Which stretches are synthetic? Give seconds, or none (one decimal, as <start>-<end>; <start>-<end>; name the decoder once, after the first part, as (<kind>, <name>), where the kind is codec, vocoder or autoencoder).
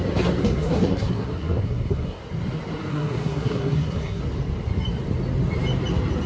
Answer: 0.4-2.2 (codec, SNAC); 2.9-4.2